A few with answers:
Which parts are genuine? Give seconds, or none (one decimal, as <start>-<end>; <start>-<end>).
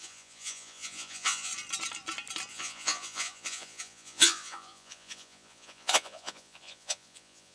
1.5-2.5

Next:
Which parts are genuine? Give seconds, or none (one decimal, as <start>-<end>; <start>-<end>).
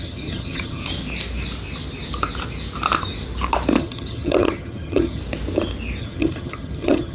0.8-3.8; 5.2-6.0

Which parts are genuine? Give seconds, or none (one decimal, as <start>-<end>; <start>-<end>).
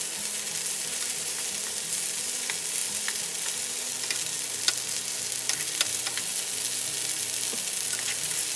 0.0-8.6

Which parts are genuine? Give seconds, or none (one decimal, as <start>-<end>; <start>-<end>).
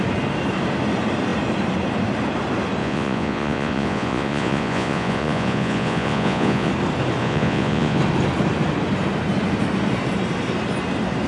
0.0-2.8; 6.7-7.2; 8.0-11.3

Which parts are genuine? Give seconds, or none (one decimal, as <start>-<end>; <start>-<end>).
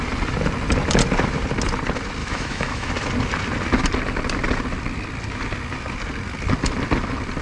0.0-2.2; 2.9-7.4